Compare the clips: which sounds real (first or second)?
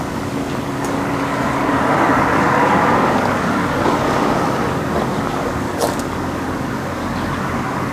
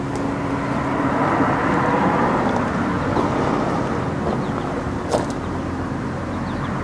second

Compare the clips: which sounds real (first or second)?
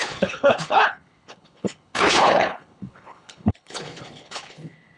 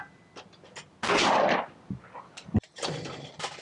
second